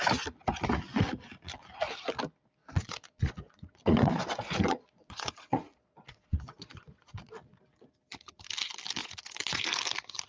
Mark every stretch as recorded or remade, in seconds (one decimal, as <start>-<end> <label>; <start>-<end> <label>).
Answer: 0.0-2.6 recorded; 2.6-7.3 remade; 7.3-9.0 recorded; 9.0-9.6 remade; 9.6-10.3 recorded